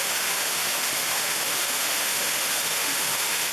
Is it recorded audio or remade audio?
remade